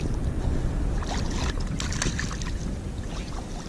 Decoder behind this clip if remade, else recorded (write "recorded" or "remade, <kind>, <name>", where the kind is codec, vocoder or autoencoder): recorded